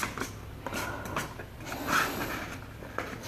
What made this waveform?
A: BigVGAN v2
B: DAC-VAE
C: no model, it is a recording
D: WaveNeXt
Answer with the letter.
C